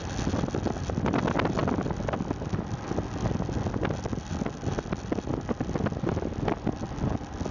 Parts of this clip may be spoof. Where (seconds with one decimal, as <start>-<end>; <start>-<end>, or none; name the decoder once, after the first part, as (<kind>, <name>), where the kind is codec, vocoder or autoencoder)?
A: none